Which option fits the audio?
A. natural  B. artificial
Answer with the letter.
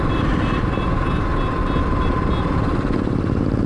A